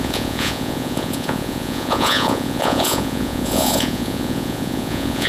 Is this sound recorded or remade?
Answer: remade